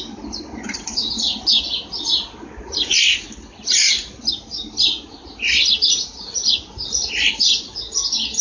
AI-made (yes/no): no